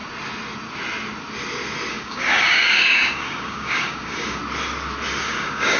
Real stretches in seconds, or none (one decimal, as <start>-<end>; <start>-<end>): 0.0-1.9; 4.4-5.2